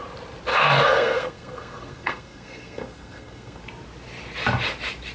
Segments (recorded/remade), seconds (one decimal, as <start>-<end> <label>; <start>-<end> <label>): 0.0-0.5 recorded; 0.5-3.6 remade; 3.6-5.1 recorded